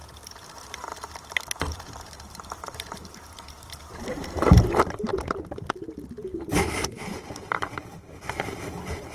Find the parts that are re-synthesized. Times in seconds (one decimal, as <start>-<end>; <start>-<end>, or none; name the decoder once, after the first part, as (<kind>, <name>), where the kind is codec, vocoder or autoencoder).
0.0-4.0 (vocoder, BigVGAN v2); 5.1-5.6; 6.3-7.6